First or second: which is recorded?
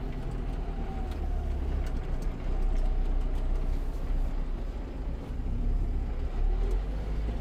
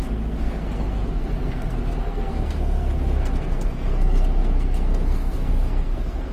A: first